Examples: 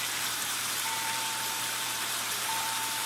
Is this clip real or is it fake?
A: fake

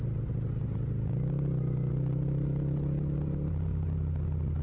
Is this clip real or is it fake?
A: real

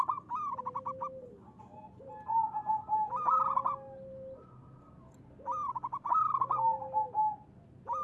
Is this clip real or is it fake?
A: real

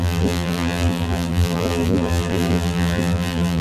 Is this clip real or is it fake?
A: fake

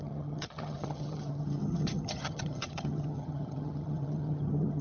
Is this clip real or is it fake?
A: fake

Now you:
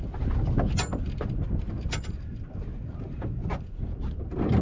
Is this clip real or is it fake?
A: real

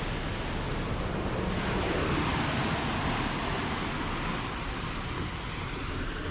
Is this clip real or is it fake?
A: real